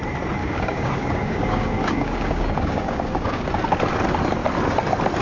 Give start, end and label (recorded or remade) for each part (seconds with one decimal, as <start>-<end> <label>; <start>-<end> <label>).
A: 0.0-0.4 recorded; 0.4-3.5 remade; 3.5-5.2 recorded